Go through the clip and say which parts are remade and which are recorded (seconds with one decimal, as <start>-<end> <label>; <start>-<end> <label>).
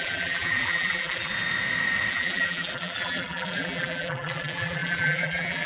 0.0-1.3 remade; 1.3-2.1 recorded; 2.1-5.7 remade